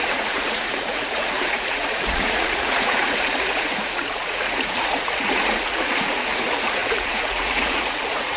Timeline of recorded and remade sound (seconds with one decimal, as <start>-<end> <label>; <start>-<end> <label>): 0.0-8.4 remade